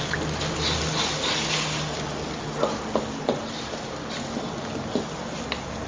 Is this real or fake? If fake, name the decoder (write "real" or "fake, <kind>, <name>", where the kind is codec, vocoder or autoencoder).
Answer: real